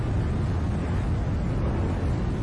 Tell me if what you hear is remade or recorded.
recorded